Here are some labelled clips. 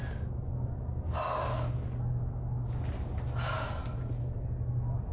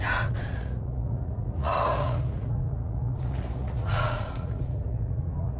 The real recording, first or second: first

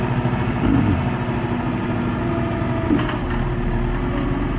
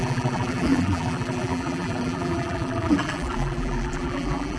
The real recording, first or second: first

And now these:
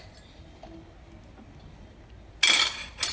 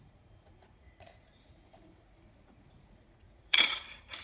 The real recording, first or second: first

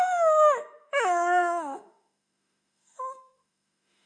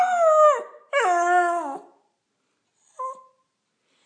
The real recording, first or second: second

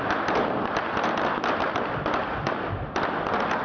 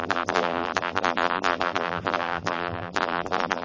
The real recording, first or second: first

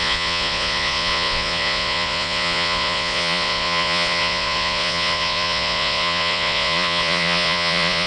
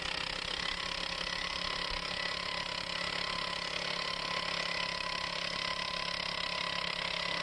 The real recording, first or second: second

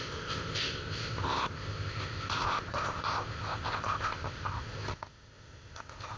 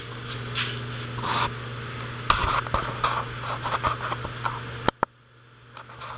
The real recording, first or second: second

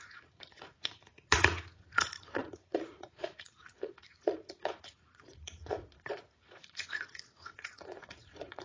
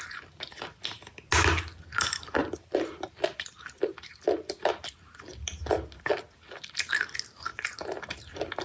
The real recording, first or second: second